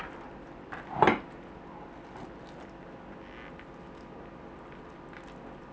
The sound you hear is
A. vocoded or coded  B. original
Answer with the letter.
B